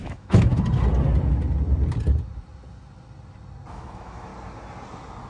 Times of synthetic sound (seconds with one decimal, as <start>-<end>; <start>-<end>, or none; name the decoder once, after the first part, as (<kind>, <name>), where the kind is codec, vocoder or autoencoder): 0.0-0.5 (autoencoder, DAC-VAE); 3.7-4.3